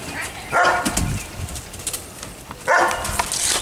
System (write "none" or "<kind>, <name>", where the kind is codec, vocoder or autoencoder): none